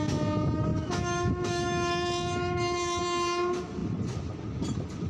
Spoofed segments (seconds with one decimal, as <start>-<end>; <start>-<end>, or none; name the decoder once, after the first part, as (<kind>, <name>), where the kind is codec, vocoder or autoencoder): 0.7-3.0 (autoencoder, DAC-VAE)